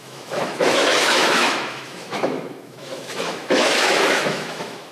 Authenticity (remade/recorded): remade